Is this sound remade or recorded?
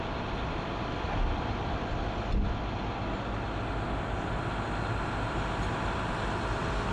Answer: recorded